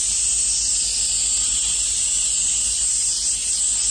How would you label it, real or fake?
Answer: real